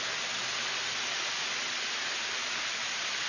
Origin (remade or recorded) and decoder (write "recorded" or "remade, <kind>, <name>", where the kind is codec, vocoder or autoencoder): recorded